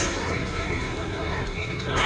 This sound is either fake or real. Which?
fake